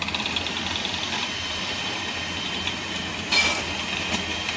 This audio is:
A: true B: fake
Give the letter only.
A